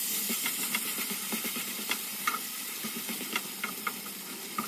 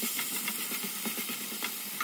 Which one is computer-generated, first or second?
first